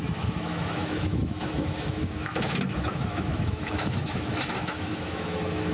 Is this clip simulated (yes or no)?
yes